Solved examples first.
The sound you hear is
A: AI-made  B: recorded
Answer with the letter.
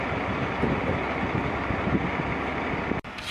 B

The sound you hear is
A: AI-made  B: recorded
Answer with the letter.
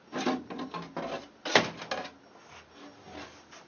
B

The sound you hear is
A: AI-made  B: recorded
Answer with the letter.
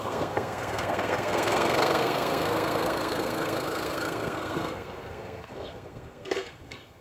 A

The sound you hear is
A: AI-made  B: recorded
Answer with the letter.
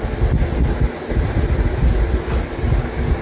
B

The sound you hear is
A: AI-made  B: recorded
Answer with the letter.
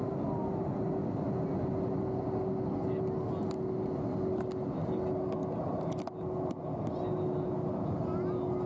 B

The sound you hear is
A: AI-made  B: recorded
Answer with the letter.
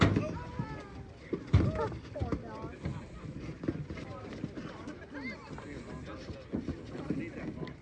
B